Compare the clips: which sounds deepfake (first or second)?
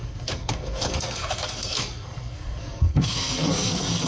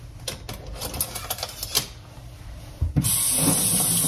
first